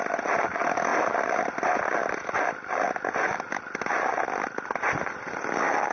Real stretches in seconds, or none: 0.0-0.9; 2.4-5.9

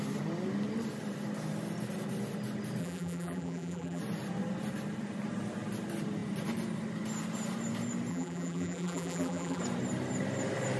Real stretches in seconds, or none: 0.0-2.8; 4.0-8.1; 9.6-10.8

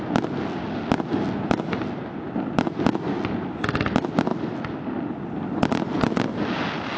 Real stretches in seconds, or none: 0.0-4.3; 5.8-7.0

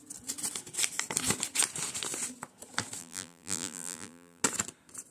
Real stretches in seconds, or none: 0.0-3.0; 4.4-5.1